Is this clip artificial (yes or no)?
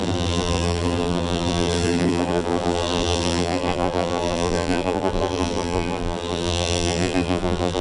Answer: yes